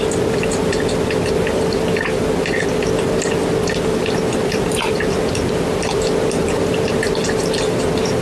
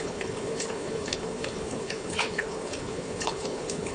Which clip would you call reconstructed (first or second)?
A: second